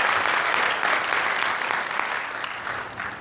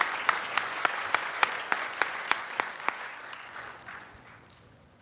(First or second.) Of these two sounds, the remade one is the second